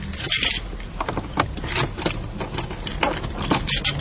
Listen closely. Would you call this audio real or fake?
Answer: real